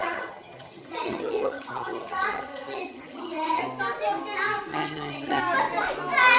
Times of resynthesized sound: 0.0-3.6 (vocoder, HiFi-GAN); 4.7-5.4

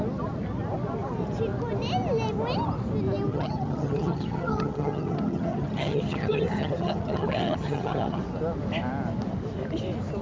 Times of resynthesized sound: 3.3-8.2 (vocoder, HiFi-GAN)

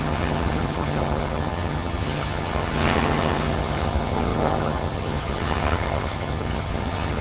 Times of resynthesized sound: 0.0-7.2 (vocoder, HiFi-GAN)

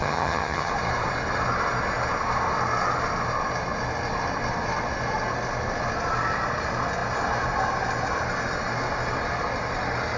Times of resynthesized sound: 0.0-0.7 (vocoder, HiFi-GAN)